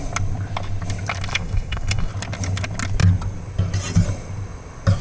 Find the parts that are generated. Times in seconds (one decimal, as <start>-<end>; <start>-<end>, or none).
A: 1.3-2.1